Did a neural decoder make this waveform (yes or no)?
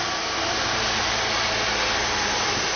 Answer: no